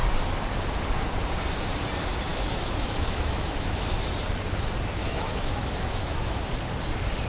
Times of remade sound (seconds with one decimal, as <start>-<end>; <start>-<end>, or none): 2.3-3.9; 5.0-6.4

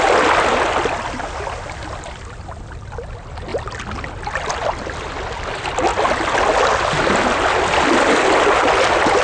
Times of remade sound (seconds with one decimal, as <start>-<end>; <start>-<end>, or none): none

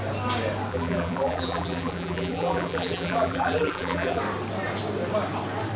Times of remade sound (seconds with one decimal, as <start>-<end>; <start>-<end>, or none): 0.7-4.2

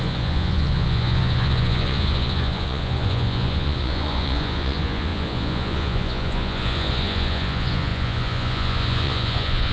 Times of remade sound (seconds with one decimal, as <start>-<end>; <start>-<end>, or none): 0.0-9.7

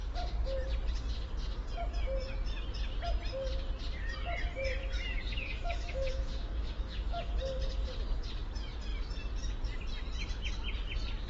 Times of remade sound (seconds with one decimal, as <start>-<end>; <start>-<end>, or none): 4.8-7.3

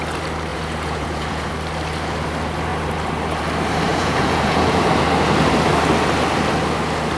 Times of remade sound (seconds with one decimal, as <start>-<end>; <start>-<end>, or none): 0.5-1.5; 3.9-4.9

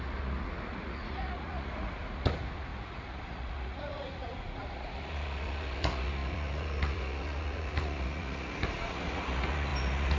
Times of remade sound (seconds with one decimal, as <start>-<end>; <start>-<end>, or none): 0.0-10.2